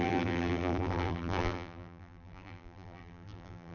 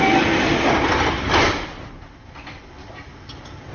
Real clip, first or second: second